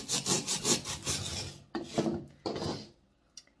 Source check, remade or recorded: recorded